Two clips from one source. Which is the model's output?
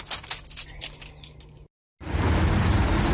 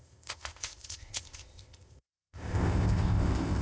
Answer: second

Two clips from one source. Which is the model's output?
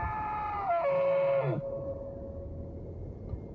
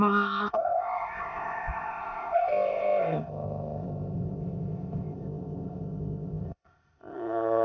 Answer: second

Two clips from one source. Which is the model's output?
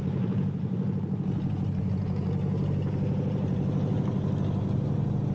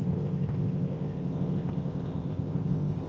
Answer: second